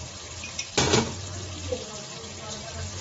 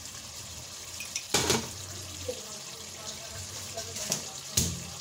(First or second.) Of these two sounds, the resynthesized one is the second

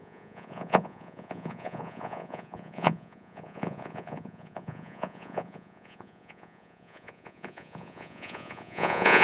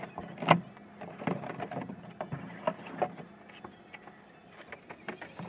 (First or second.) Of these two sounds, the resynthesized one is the first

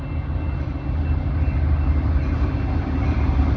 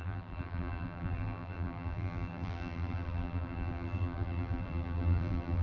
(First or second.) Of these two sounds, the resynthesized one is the second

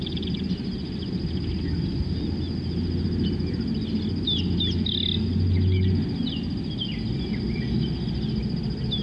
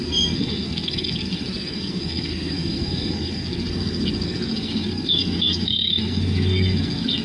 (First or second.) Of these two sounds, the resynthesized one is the second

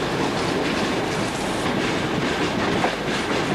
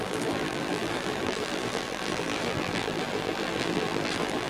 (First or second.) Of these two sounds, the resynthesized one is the second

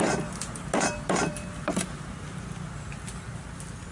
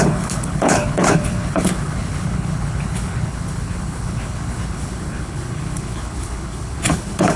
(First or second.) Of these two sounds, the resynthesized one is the second